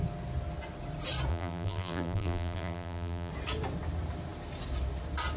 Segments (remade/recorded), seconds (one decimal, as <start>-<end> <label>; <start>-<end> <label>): 0.0-1.3 recorded; 1.3-3.3 remade; 3.3-5.4 recorded